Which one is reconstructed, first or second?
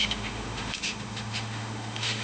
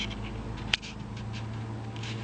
first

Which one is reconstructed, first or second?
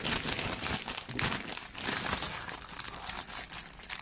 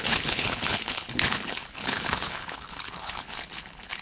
second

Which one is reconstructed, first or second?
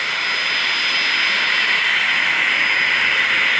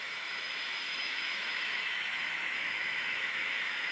second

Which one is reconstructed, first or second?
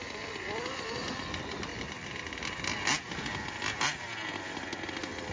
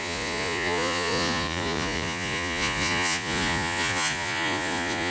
second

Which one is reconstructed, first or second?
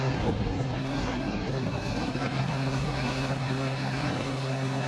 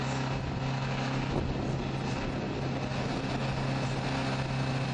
first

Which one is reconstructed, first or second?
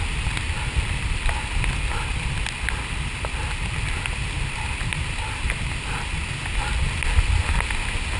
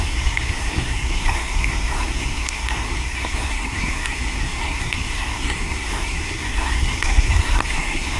second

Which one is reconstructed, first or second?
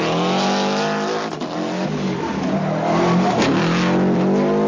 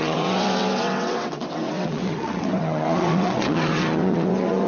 second